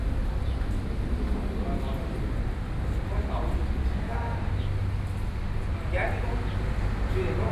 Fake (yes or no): no